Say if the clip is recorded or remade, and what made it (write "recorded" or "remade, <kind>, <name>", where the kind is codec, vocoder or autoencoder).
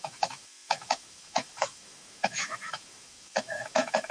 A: remade, autoencoder, DAC-VAE